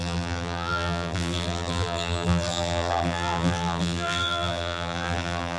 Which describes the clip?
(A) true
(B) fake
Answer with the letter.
B